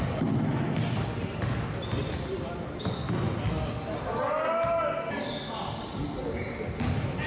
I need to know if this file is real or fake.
real